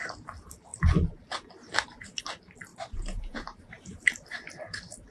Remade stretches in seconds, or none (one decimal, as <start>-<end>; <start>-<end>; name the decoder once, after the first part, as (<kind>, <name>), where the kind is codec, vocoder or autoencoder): 2.7-5.1 (vocoder, BigVGAN v2)